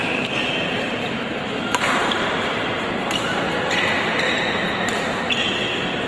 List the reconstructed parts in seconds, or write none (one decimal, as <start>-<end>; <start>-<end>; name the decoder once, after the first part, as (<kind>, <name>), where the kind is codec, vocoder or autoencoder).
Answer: 0.0-3.7 (vocoder, BigVGAN v2)